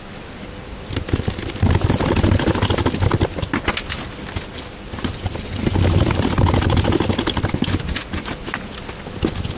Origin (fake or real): fake